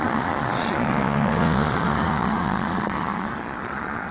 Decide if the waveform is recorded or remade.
remade